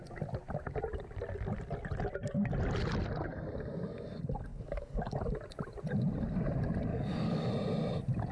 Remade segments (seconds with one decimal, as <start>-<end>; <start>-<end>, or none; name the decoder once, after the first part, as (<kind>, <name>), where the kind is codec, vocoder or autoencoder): 4.5-5.2 (codec, DAC); 6.9-7.5